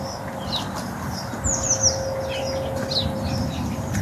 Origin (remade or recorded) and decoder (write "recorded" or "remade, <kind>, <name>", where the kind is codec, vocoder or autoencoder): recorded